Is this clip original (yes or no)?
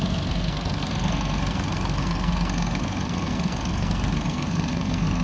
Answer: no